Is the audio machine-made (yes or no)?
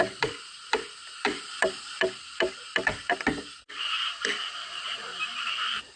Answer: yes